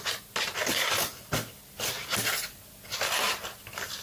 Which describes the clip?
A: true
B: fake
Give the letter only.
A